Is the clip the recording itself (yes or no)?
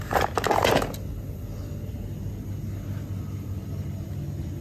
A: yes